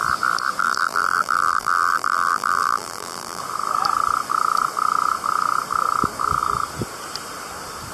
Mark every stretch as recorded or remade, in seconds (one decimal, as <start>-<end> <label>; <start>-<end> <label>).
0.0-0.6 recorded; 0.6-3.4 remade; 3.4-7.9 recorded